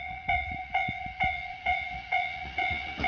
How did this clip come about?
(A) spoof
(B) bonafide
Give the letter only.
A